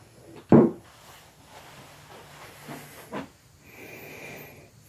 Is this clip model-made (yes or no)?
no